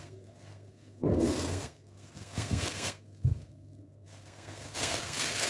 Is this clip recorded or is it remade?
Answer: remade